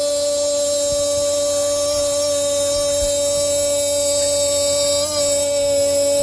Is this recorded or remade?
recorded